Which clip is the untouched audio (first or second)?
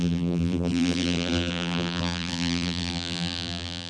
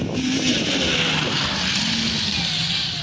second